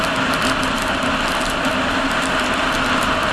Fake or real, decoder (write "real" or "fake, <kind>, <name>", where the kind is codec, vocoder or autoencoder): real